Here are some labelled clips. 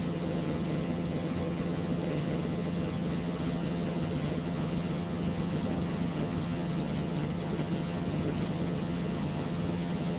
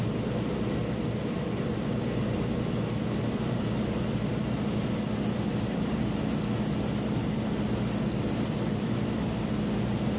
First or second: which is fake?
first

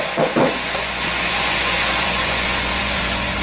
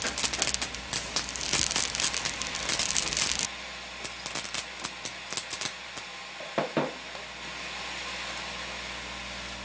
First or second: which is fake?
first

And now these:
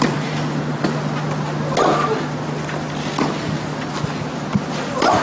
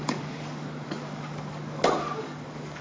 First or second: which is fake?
second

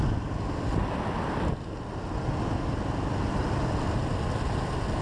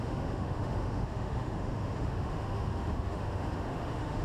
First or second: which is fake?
second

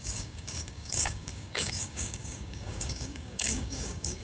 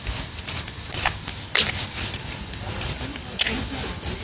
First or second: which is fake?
first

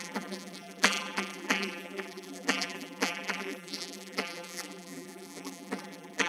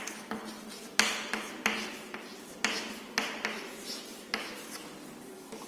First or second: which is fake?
first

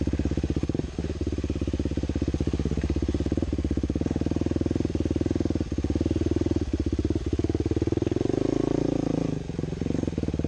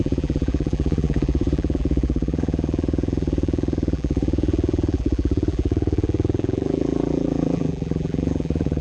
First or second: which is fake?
second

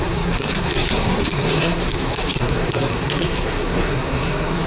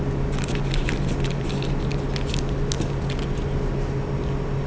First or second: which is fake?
first